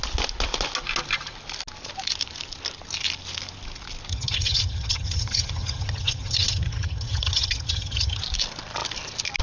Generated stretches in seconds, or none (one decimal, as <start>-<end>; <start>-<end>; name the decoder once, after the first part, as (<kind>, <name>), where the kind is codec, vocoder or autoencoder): 4.1-8.2 (vocoder, HiFi-GAN)